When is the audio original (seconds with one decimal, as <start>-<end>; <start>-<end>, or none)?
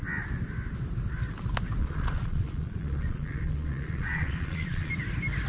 0.0-1.8; 4.9-5.5